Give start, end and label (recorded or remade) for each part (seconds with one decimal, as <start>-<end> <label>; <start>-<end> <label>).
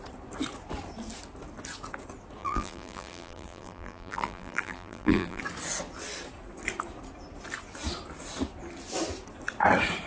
0.0-2.4 recorded; 2.4-5.4 remade; 5.4-10.1 recorded